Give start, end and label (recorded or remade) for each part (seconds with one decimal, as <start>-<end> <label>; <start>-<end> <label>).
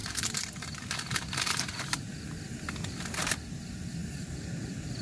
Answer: 0.0-2.0 remade; 2.0-4.0 recorded; 4.0-5.0 remade